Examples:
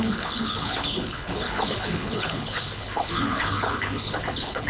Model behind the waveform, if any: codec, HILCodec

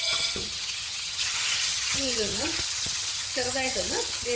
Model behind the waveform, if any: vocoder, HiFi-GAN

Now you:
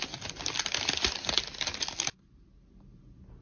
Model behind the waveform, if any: none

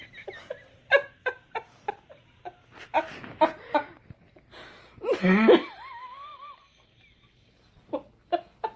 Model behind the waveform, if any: none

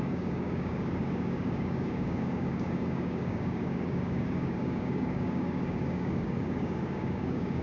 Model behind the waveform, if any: codec, DAC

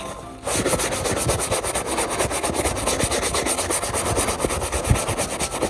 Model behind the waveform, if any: none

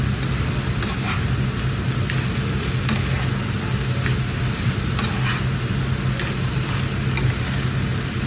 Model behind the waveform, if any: none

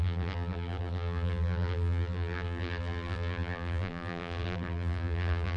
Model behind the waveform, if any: vocoder, BigVGAN v2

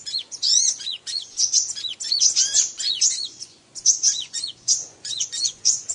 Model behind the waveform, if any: vocoder, Vocos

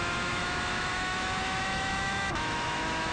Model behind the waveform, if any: autoencoder, DAC-VAE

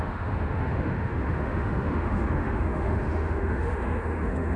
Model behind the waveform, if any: autoencoder, DAC-VAE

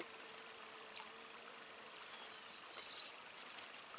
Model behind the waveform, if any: none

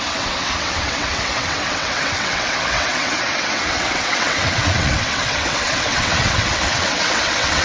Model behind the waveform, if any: vocoder, WaveNeXt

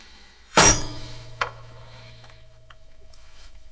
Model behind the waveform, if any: autoencoder, DAC-VAE